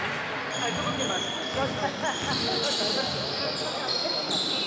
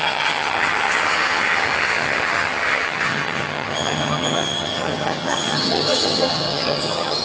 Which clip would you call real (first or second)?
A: first